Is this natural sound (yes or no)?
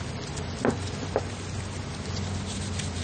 yes